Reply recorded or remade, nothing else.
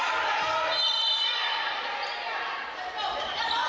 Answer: remade